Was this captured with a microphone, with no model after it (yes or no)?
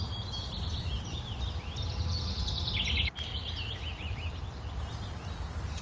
yes